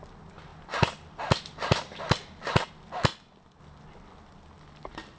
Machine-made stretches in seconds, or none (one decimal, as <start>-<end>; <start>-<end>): none